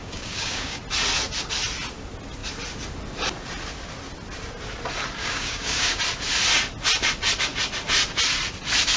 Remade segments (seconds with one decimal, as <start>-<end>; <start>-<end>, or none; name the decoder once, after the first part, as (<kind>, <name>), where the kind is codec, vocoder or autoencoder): 0.0-0.8 (codec, DAC); 5.2-6.0